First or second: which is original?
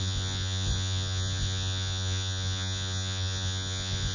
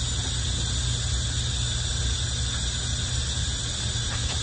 second